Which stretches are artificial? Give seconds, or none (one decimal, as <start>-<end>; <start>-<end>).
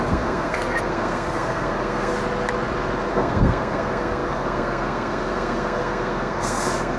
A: 0.0-2.1; 3.1-7.0